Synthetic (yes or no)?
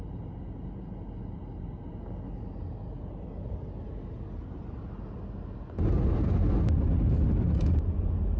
no